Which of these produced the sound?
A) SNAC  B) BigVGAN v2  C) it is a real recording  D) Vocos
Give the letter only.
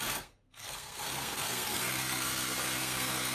A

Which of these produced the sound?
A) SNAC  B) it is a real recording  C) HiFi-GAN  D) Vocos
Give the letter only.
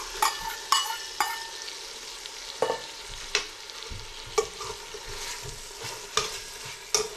B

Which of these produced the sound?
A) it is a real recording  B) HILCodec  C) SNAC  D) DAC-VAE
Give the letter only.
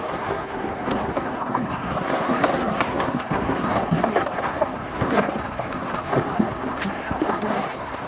C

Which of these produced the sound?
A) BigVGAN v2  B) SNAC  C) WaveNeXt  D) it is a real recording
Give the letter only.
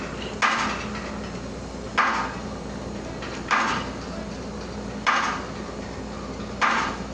D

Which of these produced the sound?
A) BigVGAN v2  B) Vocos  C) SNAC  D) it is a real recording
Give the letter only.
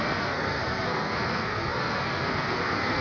C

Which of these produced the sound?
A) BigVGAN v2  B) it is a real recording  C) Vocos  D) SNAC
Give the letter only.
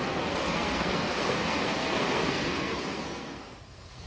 D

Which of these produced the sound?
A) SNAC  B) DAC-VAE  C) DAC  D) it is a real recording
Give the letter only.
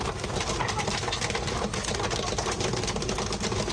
D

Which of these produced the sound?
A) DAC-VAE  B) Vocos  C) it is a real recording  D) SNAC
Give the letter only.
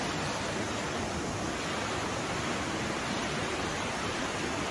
C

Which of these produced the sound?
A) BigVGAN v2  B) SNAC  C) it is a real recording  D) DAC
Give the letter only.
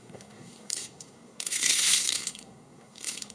B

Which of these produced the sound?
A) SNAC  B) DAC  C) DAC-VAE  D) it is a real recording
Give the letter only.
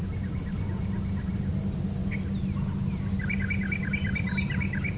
D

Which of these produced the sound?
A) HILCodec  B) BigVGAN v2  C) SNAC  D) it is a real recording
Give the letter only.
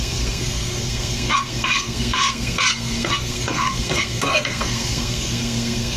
C